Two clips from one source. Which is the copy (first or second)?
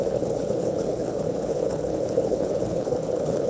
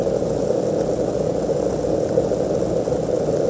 first